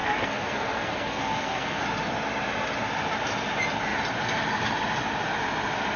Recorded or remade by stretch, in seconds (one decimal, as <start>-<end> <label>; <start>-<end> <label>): 0.0-1.8 remade; 1.8-6.0 recorded